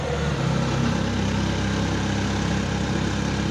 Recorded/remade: recorded